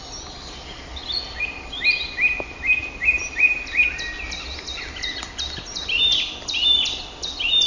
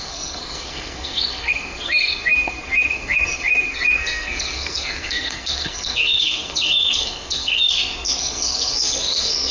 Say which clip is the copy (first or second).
second